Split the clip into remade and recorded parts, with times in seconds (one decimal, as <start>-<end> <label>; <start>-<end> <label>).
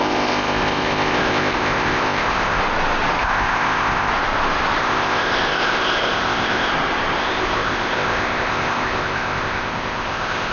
0.0-2.6 remade; 2.6-3.2 recorded; 3.2-4.1 remade; 4.1-4.8 recorded; 4.8-6.7 remade; 6.7-7.2 recorded; 7.2-10.5 remade